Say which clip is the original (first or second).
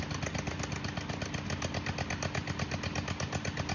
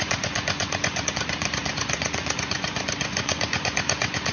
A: first